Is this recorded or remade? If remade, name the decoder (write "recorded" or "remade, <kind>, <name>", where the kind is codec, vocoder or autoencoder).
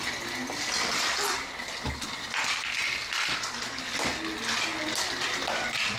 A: recorded